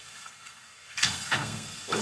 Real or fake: fake